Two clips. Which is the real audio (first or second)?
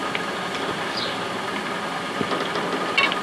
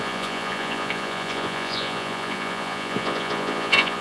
first